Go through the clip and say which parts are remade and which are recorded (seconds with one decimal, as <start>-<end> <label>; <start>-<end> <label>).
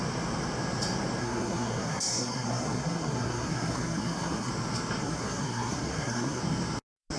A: 0.0-1.2 recorded; 1.2-4.5 remade; 4.5-5.0 recorded; 5.0-6.4 remade; 6.4-7.2 recorded